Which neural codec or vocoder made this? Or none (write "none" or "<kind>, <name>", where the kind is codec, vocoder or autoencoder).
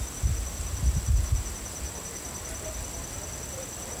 none